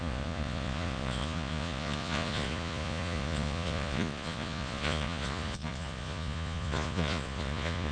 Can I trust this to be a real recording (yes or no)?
no